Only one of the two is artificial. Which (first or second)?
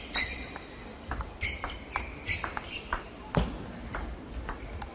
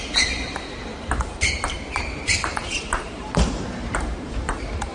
second